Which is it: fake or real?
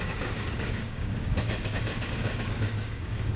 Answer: fake